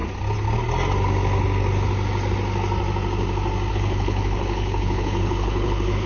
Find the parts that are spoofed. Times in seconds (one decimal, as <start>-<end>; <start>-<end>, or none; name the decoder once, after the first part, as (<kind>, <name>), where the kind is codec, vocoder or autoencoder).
3.7-6.1 (codec, HILCodec)